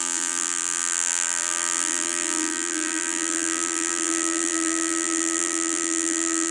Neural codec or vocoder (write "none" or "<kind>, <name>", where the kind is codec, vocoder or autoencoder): vocoder, BigVGAN v2